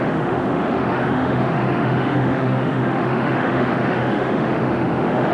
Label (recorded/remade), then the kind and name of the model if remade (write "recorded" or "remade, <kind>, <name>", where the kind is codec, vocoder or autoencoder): remade, autoencoder, DAC-VAE